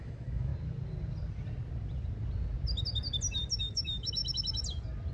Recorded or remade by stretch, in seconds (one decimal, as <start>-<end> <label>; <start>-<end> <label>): 0.0-0.5 remade; 0.5-3.6 recorded; 3.6-4.2 remade; 4.2-5.1 recorded